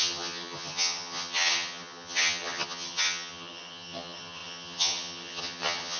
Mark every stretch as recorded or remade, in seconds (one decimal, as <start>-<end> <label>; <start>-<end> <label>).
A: 0.0-6.0 remade